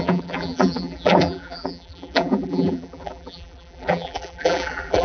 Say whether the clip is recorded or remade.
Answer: remade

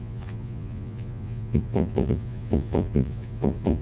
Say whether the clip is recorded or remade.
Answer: remade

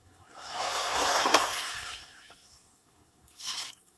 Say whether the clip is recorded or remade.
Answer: remade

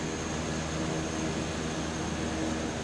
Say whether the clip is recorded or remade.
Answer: recorded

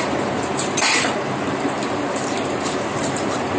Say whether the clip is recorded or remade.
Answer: remade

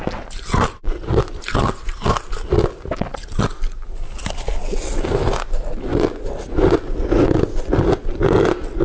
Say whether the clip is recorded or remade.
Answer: recorded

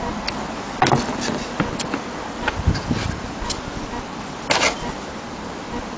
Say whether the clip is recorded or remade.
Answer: recorded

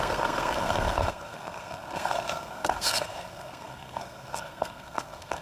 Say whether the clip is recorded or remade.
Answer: remade